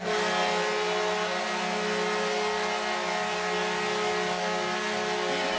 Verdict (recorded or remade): recorded